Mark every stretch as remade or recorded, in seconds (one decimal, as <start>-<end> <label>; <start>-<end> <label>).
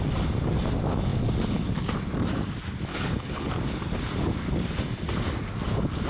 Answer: 0.0-2.9 recorded; 2.9-3.5 remade; 3.5-6.1 recorded